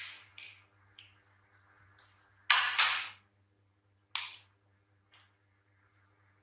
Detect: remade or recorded recorded